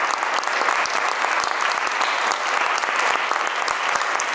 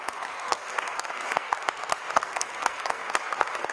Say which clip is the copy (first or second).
second